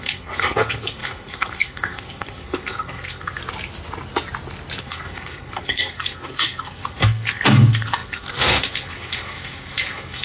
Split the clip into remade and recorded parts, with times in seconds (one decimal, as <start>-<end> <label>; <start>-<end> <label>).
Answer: 0.0-3.4 remade; 3.4-4.8 recorded; 4.8-10.2 remade